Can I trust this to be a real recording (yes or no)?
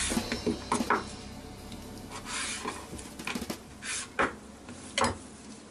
yes